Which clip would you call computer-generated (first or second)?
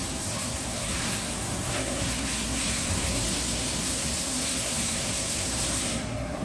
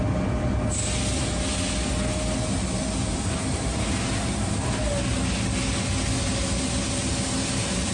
first